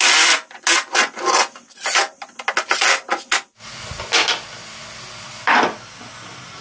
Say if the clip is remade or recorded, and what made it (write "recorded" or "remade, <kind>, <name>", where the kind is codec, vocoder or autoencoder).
recorded